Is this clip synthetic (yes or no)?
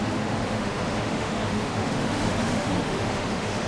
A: yes